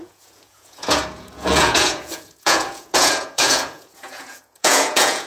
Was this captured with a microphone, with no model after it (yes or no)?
no